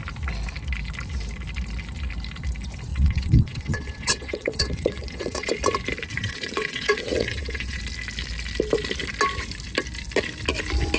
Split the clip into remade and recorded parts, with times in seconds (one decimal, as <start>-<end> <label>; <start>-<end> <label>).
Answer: 0.0-2.9 recorded; 2.9-5.5 remade; 5.5-6.1 recorded; 6.1-7.8 remade; 7.8-11.0 recorded